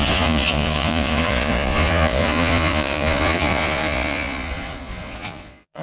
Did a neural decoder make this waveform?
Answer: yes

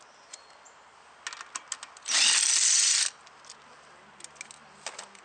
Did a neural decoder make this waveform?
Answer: no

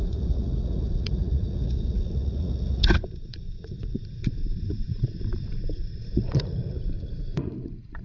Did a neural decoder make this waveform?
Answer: yes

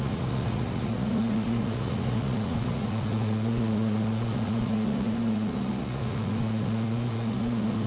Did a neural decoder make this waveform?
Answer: yes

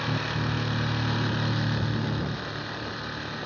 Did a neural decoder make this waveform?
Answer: no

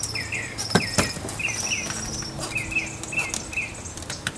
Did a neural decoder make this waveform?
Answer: no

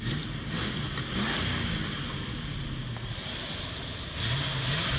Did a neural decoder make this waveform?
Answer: no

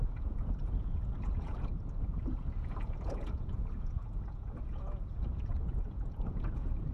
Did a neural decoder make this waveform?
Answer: yes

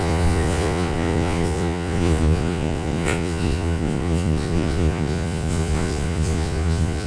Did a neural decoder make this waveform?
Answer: yes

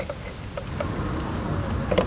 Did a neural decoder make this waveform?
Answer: no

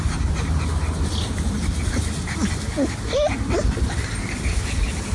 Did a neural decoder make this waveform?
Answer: no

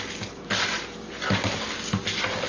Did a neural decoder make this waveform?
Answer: no